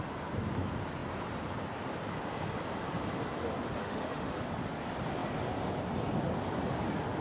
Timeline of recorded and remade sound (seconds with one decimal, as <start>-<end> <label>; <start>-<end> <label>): 0.0-3.8 recorded; 3.8-4.3 remade; 4.3-7.2 recorded